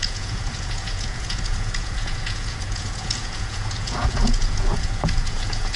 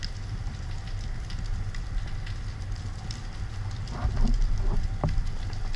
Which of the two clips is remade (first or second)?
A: first